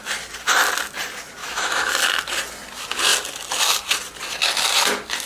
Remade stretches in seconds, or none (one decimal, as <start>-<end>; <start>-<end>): 1.4-1.9